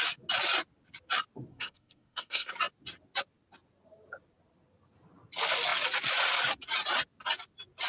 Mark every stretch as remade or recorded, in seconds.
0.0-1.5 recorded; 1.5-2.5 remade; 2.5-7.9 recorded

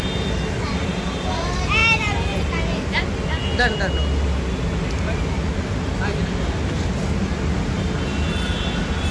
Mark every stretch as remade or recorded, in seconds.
0.0-9.1 recorded

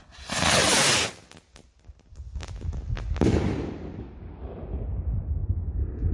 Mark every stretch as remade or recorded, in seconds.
0.0-6.1 recorded

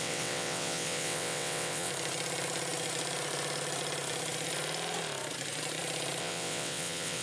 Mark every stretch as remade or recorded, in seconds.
0.0-1.9 remade; 1.9-6.2 recorded; 6.2-7.2 remade

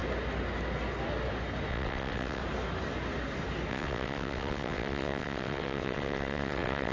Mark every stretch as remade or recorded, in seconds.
0.0-1.7 recorded; 1.7-2.4 remade; 2.4-3.7 recorded; 3.7-6.9 remade